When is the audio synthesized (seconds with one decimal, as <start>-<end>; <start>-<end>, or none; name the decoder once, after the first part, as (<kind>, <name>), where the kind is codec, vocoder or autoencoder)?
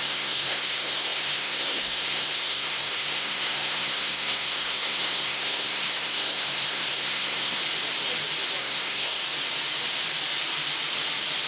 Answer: 0.0-7.6 (codec, SNAC); 8.6-9.2